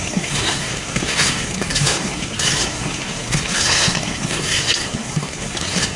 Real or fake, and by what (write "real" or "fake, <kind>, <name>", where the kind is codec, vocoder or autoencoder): fake, codec, SNAC